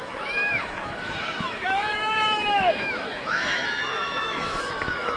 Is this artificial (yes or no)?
yes